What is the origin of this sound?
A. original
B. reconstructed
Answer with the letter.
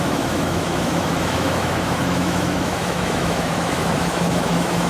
B